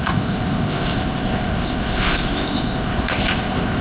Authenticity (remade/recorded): remade